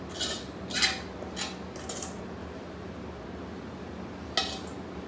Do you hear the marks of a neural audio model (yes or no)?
no